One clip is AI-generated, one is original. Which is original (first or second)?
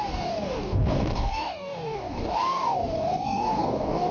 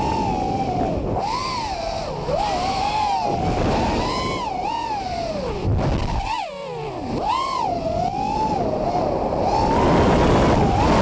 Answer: second